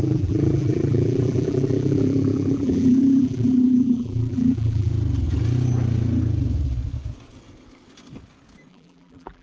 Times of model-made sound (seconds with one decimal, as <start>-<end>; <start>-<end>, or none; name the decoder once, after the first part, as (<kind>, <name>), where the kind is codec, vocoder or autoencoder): 0.0-4.9 (vocoder, BigVGAN v2); 8.7-9.4